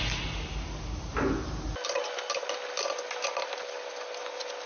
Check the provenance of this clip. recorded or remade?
recorded